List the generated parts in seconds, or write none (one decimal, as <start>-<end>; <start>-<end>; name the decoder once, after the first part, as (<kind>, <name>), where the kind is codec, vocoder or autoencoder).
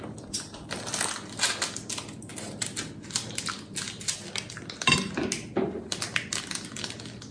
none